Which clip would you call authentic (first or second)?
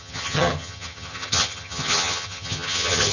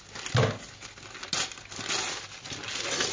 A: second